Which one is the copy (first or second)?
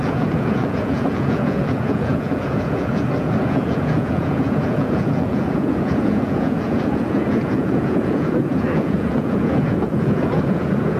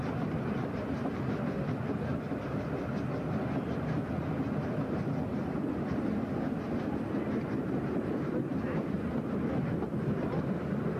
first